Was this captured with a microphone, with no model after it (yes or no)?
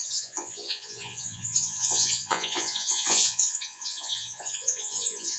no